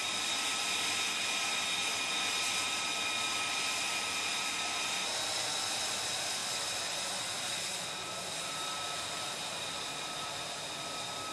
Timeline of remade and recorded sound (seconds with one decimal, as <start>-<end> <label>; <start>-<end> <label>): 0.0-11.3 recorded